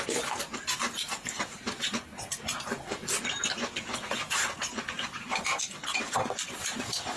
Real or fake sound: real